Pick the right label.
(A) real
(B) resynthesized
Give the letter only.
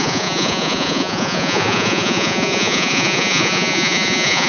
B